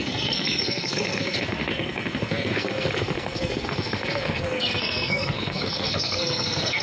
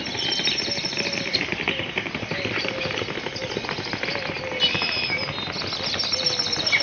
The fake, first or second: first